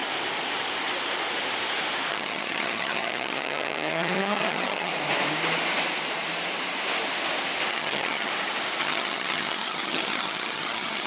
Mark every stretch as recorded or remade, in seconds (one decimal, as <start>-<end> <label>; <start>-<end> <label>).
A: 0.0-2.1 recorded; 2.1-4.9 remade; 4.9-7.7 recorded; 7.7-8.3 remade; 8.3-8.8 recorded; 8.8-11.1 remade